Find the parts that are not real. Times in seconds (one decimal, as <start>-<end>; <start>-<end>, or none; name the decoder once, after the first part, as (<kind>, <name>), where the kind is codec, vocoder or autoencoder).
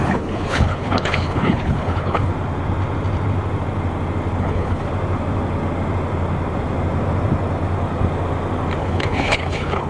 0.0-2.3 (codec, HILCodec); 4.4-4.9; 8.8-9.9